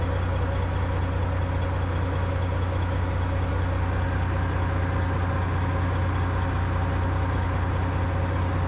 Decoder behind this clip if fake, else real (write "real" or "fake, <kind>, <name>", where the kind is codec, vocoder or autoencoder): real